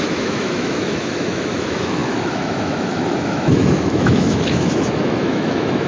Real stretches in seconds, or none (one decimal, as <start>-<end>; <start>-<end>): none